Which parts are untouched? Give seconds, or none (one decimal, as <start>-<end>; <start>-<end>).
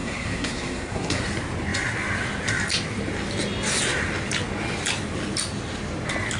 1.2-6.4